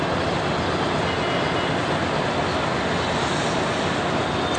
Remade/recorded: recorded